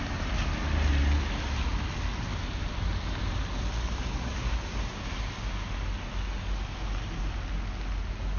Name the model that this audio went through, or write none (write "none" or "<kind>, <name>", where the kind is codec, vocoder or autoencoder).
none